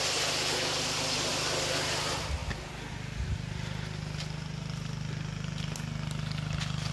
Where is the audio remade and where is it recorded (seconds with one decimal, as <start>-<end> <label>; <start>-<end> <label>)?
0.0-6.9 recorded